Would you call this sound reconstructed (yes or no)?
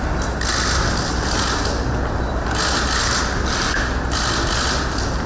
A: no